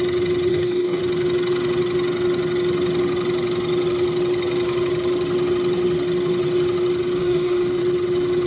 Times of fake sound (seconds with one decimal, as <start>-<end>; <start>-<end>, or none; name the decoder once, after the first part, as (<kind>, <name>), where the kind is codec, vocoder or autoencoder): 0.5-1.0 (codec, DAC); 7.2-7.8